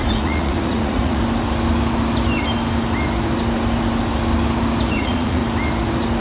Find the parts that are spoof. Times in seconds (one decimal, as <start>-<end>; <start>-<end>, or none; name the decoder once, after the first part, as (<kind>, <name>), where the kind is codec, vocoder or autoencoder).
0.0-1.2 (vocoder, Vocos); 4.9-5.4